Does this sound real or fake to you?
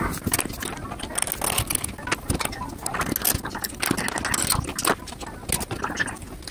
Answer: real